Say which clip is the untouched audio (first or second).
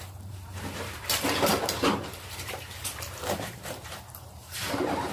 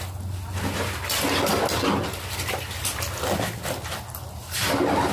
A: second